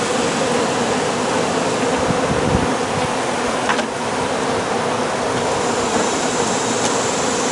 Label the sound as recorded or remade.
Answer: recorded